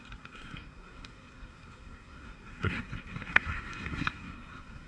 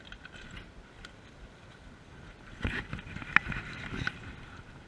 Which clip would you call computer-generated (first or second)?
first